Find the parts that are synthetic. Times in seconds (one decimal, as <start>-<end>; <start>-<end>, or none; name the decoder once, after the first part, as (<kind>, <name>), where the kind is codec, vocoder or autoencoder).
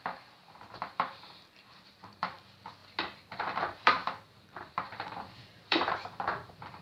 0.0-2.8 (vocoder, BigVGAN v2); 3.4-6.8